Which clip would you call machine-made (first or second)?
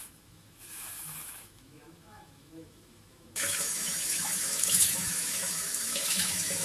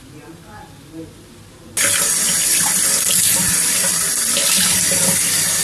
first